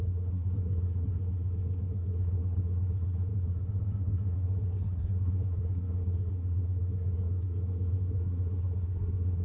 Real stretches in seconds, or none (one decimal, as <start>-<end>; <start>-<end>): none